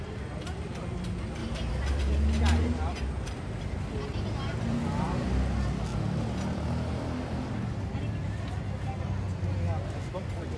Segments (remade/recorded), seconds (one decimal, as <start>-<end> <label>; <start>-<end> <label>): 0.0-1.4 recorded; 1.4-2.0 remade; 2.0-4.1 recorded; 4.1-4.8 remade; 4.8-10.6 recorded